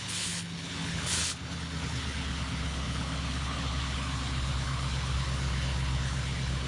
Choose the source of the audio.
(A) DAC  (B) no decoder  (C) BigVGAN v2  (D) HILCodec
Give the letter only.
D